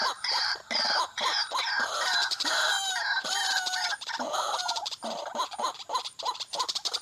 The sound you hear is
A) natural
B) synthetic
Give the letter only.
B